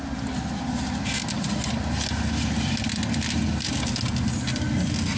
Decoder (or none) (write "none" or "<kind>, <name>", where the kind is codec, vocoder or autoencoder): none